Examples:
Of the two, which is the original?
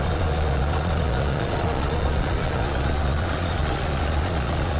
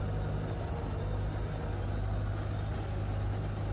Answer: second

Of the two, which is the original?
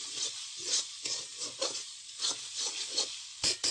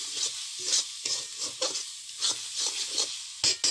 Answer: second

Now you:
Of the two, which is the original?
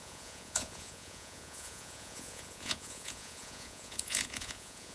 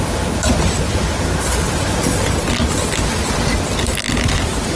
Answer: second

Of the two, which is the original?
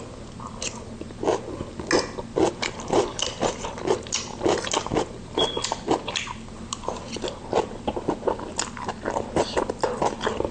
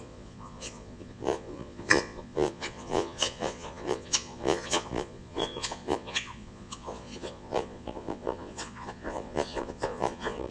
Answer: first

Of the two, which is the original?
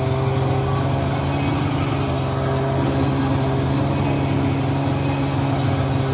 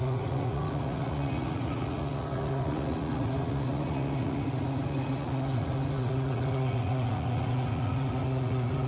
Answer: first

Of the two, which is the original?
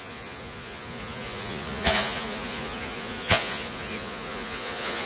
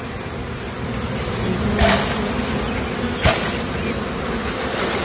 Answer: second